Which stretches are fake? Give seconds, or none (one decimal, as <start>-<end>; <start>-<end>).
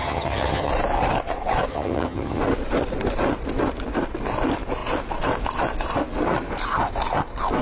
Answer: 0.0-0.7; 1.7-2.4